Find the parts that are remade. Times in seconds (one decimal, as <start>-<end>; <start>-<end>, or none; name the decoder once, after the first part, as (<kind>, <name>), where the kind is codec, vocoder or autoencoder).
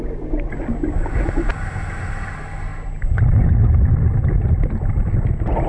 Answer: none